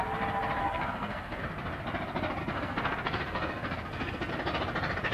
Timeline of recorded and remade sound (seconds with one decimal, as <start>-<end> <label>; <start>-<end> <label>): 0.0-0.6 recorded; 0.6-1.4 remade; 1.4-2.4 recorded; 2.4-4.3 remade; 4.3-5.1 recorded